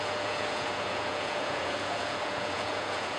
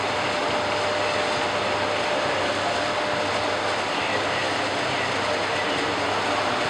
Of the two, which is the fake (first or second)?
first